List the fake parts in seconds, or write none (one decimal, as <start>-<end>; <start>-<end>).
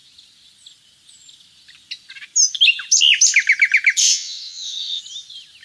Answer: 4.0-5.0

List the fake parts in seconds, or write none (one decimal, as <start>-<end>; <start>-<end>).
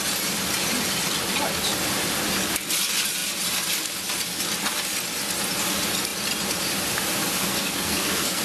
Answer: 7.4-8.4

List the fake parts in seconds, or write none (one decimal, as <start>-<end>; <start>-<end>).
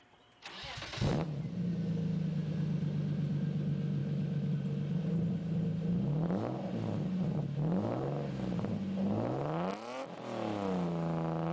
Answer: 4.0-4.5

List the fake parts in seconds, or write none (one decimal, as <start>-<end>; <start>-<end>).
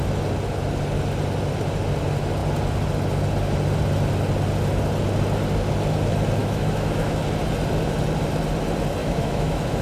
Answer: 6.4-7.2; 9.0-9.8